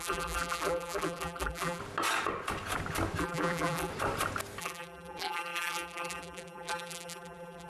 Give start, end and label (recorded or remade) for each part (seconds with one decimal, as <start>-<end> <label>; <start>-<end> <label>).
0.0-1.8 remade; 1.8-3.2 recorded; 3.2-3.9 remade; 3.9-4.6 recorded; 4.6-7.7 remade